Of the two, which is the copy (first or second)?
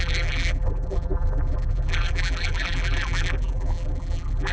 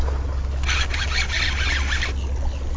first